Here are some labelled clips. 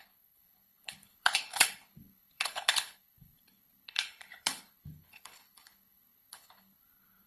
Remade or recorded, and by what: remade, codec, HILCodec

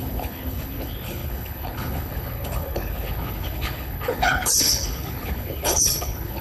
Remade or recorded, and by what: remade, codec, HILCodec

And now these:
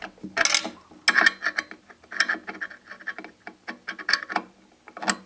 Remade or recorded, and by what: recorded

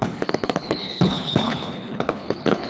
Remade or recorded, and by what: remade, codec, HILCodec